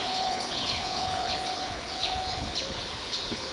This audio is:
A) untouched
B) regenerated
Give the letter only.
B